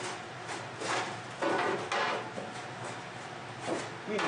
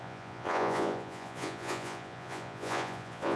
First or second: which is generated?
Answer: second